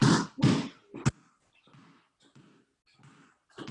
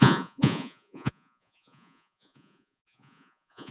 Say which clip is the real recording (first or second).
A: first